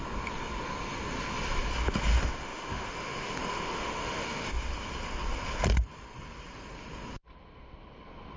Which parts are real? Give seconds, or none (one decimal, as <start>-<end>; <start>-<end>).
0.0-2.1; 4.7-8.4